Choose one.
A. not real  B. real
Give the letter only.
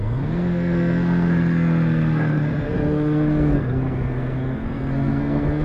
A